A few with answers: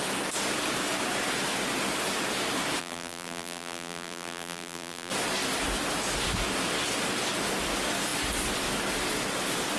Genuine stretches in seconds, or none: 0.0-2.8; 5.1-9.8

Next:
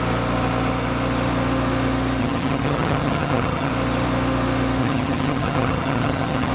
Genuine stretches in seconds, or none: 0.0-2.2; 3.7-4.8

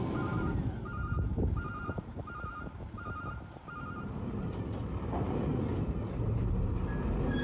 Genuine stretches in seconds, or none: 0.0-1.3; 5.5-7.4

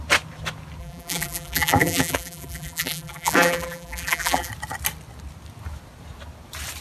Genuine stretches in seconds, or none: 0.0-0.8; 4.5-6.8

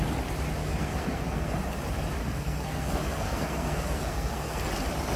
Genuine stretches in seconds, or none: 0.0-0.6; 1.5-2.2; 4.6-5.2

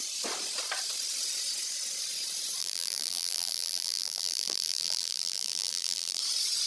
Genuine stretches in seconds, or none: 0.0-2.6; 6.2-6.7

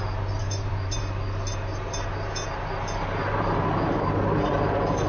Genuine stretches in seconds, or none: 0.0-0.4; 1.0-1.7; 2.6-3.2; 4.5-5.1

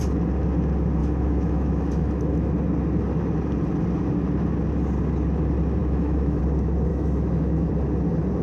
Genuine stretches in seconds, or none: 0.0-1.0; 2.5-5.8; 6.4-6.9; 7.7-8.4